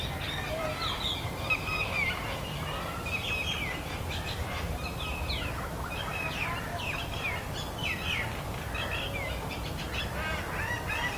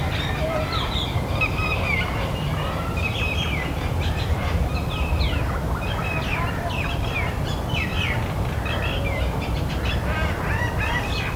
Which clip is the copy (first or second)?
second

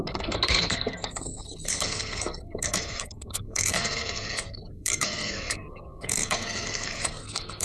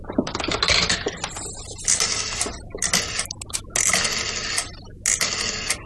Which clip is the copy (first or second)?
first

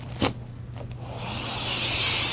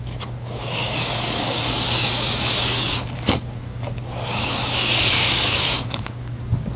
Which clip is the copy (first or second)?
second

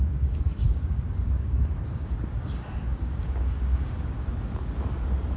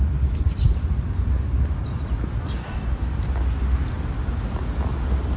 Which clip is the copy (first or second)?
first